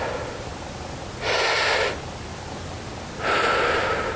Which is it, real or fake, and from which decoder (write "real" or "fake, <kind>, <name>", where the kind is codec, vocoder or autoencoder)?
real